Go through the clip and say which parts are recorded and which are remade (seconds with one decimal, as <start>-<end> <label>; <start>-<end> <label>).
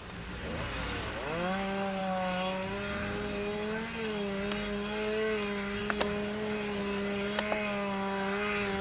0.0-8.8 recorded